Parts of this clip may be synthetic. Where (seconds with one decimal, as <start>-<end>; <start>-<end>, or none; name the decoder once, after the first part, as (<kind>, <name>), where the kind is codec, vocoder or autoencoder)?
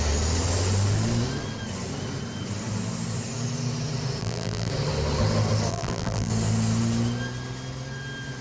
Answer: 4.2-4.7 (vocoder, BigVGAN v2); 5.7-6.3